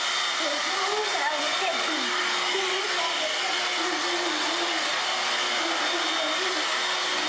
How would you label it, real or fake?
real